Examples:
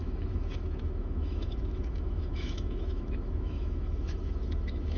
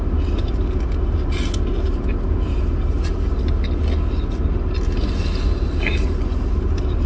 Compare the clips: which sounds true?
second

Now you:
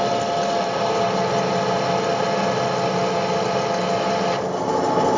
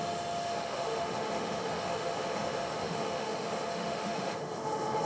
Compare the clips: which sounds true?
first